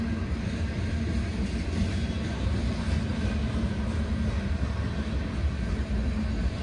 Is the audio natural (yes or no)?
yes